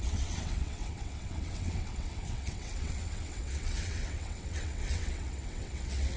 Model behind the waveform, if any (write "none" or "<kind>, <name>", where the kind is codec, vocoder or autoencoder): vocoder, WaveNeXt